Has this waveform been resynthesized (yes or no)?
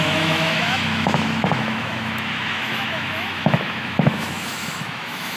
yes